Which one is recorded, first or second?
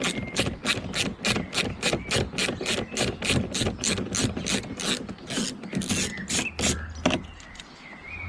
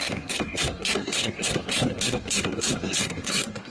first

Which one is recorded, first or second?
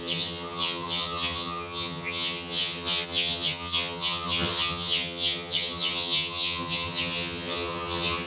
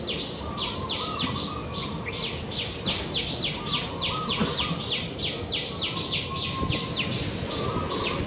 second